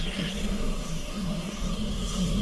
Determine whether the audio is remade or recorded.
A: remade